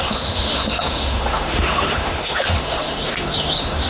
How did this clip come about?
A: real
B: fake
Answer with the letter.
B